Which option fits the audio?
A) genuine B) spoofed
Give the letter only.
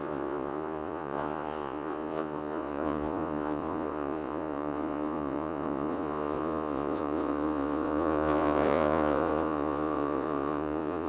B